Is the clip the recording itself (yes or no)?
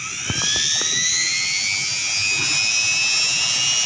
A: yes